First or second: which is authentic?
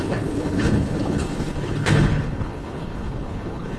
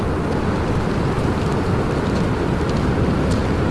second